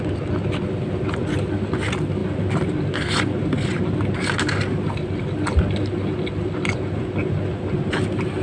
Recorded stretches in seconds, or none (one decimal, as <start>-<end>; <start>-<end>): 0.0-8.4